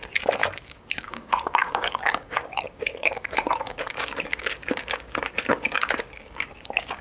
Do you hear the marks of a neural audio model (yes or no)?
yes